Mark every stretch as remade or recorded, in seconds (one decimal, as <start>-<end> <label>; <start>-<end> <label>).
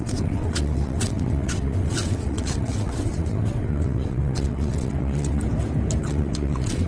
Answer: 0.0-5.4 remade; 5.4-6.0 recorded; 6.0-6.9 remade